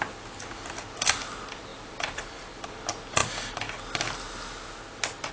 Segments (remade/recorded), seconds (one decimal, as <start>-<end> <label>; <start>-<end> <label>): 0.0-1.7 recorded; 1.7-2.2 remade; 2.2-5.3 recorded